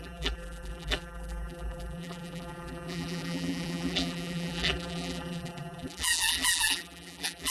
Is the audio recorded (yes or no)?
no